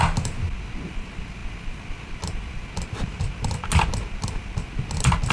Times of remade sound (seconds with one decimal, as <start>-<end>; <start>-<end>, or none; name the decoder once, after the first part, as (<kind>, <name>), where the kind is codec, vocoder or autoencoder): none